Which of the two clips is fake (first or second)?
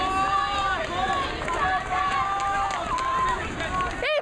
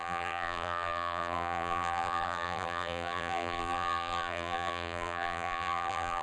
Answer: second